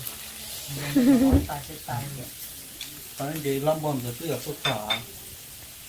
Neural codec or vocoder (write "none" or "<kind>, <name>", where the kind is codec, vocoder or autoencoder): none